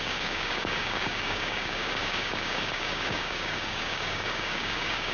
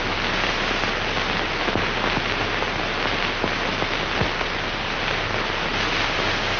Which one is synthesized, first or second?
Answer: first